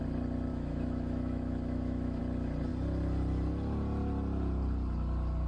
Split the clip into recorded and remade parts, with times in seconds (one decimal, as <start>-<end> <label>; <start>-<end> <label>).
0.0-0.5 recorded; 0.5-2.2 remade; 2.2-5.5 recorded

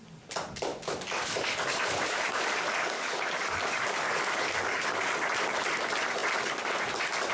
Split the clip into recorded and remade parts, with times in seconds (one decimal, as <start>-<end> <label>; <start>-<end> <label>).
0.0-0.7 recorded; 0.7-5.1 remade; 5.1-7.3 recorded